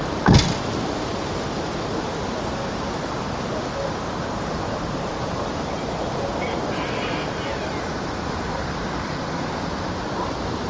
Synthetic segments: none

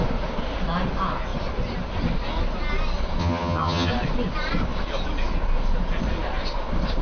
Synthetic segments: 3.2-3.9 (vocoder, HiFi-GAN)

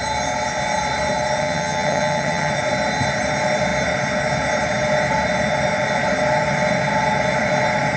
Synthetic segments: 1.4-2.5 (vocoder, HiFi-GAN)

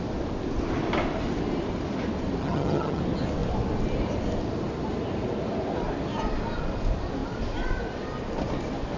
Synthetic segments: 2.4-3.0 (vocoder, HiFi-GAN)

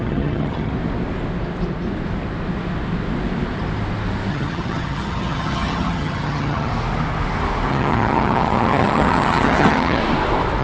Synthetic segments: 0.0-0.7 (vocoder, HiFi-GAN); 4.3-6.7; 7.7-10.0

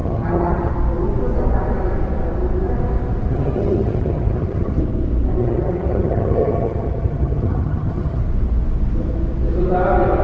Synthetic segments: 0.0-0.7 (vocoder, HiFi-GAN); 3.3-4.8; 5.4-8.2

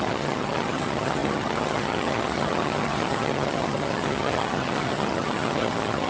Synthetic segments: 0.0-6.1 (vocoder, HiFi-GAN)